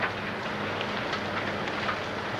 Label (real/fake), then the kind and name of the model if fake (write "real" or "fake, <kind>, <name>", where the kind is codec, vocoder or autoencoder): real